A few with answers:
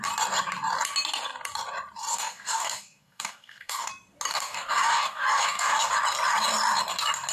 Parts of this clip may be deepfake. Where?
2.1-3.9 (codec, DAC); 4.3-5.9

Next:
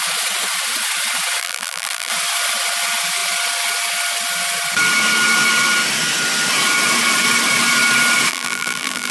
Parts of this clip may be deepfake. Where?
1.4-2.1 (vocoder, BigVGAN v2); 8.3-9.1

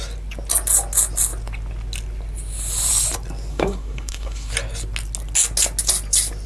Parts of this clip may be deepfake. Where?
3.5-4.5 (codec, SNAC)

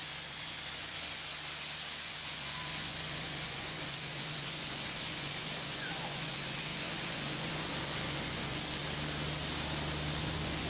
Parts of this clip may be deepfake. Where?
0.0-1.3 (vocoder, Vocos); 2.0-8.8; 10.2-10.7